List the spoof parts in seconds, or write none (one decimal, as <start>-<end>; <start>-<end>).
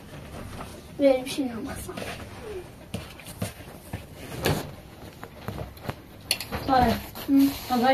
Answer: 0.7-1.7; 2.9-3.8